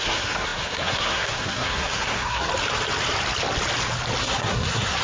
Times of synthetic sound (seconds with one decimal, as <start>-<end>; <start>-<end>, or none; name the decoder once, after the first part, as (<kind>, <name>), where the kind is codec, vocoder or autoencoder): 0.0-2.5 (codec, SNAC); 4.2-5.0